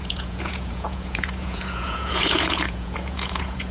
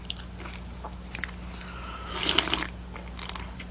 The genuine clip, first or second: second